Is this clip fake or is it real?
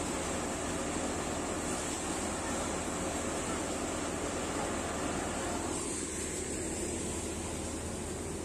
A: real